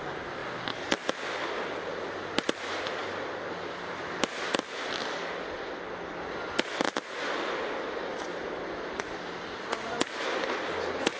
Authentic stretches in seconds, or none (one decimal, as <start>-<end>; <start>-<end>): 0.0-11.2